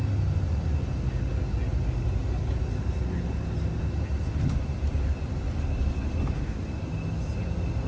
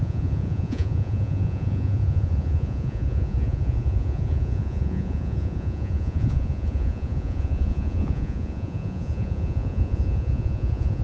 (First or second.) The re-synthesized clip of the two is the second